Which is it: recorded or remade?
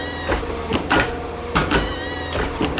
recorded